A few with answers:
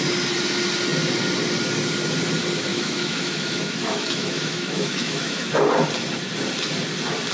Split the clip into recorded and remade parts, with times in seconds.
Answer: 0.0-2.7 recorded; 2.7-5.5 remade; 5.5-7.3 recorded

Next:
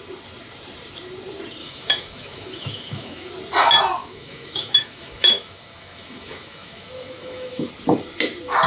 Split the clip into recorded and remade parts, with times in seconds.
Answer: 0.0-1.6 recorded; 1.6-3.3 remade; 3.3-4.0 recorded; 4.0-7.7 remade; 7.7-8.7 recorded

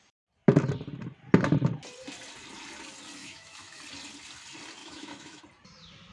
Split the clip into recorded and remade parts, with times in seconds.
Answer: 0.0-3.2 recorded; 3.2-3.8 remade; 3.8-4.8 recorded; 4.8-5.4 remade; 5.4-6.1 recorded